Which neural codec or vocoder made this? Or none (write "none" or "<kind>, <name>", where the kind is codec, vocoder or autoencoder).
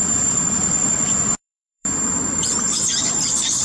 vocoder, BigVGAN v2